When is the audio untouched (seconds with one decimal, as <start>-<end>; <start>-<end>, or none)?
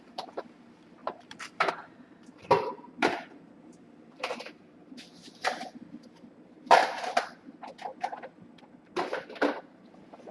6.8-9.6